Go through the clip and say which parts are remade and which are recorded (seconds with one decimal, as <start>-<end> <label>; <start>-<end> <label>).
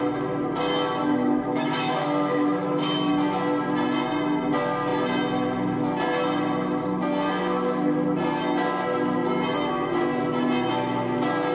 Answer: 0.0-1.0 recorded; 1.0-3.1 remade; 3.1-11.5 recorded